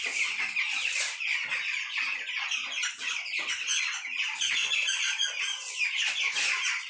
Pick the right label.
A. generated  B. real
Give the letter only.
B